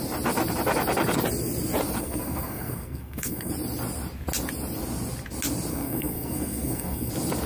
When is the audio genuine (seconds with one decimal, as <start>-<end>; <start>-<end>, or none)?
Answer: 0.0-2.0; 3.5-5.7; 7.1-7.5